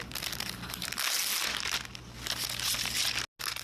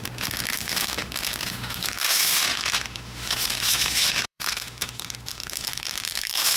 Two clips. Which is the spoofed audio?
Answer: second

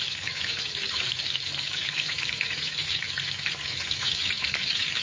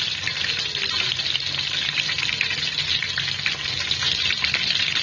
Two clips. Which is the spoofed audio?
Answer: first